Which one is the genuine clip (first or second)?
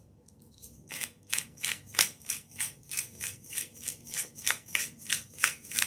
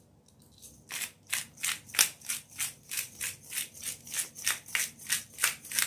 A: second